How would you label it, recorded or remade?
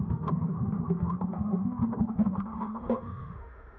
remade